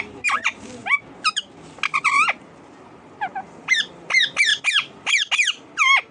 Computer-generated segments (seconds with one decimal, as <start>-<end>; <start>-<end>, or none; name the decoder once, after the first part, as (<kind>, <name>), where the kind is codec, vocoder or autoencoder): none